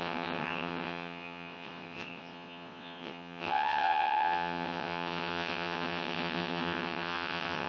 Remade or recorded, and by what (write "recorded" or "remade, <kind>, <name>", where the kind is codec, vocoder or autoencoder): remade, vocoder, WaveNeXt